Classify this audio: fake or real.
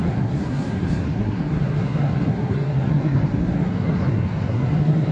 fake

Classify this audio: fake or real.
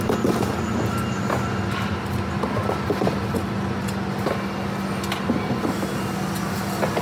real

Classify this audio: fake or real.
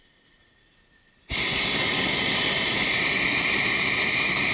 real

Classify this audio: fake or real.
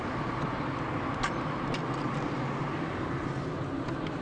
real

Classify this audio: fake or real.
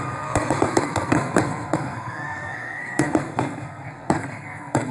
fake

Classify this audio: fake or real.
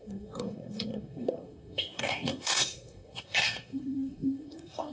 fake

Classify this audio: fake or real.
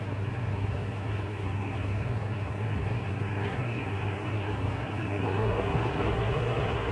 fake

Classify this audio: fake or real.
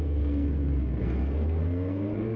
fake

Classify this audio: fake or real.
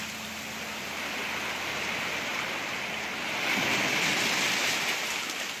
real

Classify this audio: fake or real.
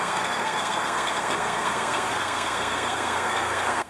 fake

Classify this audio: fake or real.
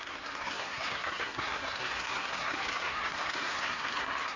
fake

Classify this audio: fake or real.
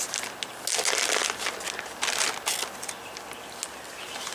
real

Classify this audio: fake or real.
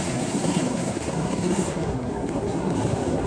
fake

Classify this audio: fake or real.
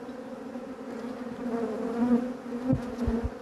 real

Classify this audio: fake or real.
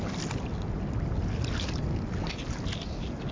real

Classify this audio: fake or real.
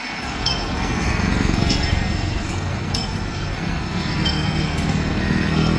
fake